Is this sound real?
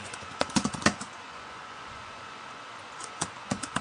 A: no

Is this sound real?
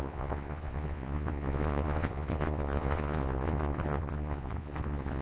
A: no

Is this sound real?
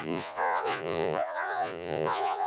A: no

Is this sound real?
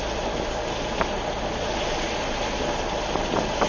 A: yes